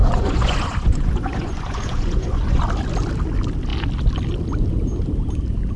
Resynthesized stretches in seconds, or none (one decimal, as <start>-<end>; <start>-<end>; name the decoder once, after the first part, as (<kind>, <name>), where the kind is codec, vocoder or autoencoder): 0.0-2.6 (vocoder, Vocos)